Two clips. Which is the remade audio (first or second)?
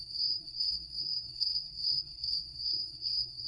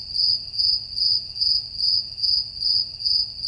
first